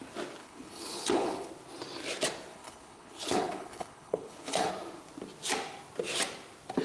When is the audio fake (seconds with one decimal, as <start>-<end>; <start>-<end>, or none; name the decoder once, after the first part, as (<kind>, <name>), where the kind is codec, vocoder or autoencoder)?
0.4-1.5 (codec, HILCodec); 2.5-4.7